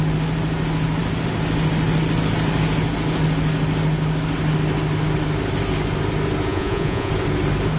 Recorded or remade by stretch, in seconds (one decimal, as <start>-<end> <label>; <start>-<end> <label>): 0.0-6.5 recorded; 6.5-7.1 remade; 7.1-7.8 recorded